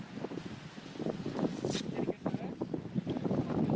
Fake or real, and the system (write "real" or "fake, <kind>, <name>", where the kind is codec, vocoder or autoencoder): real